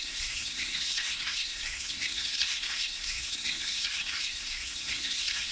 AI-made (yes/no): yes